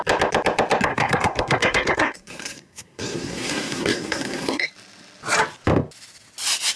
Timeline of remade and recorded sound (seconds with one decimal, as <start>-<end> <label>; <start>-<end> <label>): 0.0-0.9 recorded; 0.9-4.7 remade; 4.7-6.8 recorded